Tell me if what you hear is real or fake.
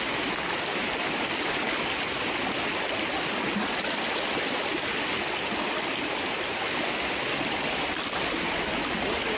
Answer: real